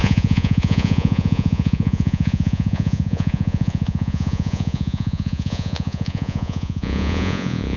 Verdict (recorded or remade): remade